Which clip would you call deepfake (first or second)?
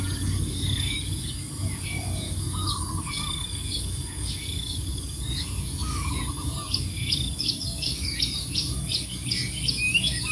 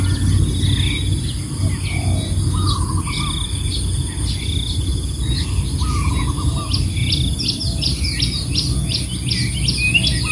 first